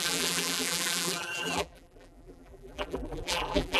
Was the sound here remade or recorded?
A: remade